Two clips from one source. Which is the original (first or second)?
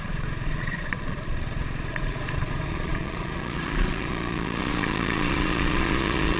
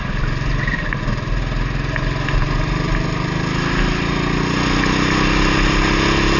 second